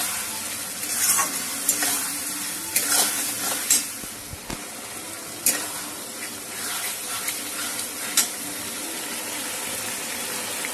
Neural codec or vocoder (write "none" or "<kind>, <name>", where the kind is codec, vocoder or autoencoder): none